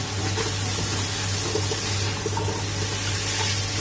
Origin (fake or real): real